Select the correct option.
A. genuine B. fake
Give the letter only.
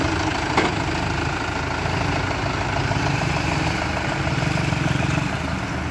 A